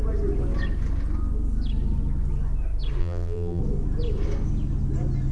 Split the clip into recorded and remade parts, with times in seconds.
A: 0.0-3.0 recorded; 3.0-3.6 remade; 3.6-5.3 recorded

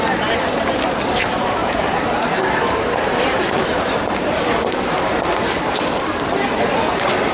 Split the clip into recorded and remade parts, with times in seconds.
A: 0.0-1.6 recorded; 1.6-6.0 remade; 6.0-7.3 recorded